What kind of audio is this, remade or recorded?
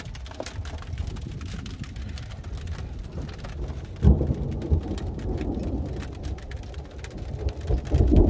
recorded